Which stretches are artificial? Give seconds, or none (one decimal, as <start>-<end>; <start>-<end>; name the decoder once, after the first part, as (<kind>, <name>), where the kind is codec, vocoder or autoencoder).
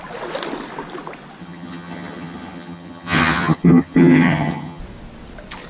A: 1.4-4.8 (vocoder, HiFi-GAN)